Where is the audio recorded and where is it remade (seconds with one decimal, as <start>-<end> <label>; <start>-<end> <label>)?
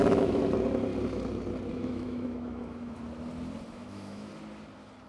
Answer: 0.0-0.4 remade; 0.4-1.7 recorded; 1.7-3.0 remade; 3.0-3.7 recorded; 3.7-4.3 remade; 4.3-5.1 recorded